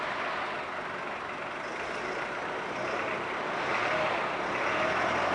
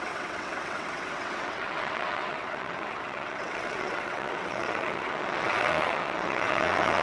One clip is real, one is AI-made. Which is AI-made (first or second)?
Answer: second